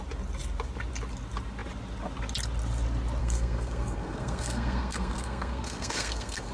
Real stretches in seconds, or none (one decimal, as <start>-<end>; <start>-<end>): 0.0-3.2